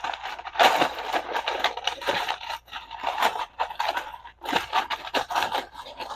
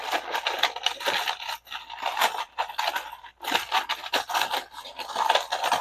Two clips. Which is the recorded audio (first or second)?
second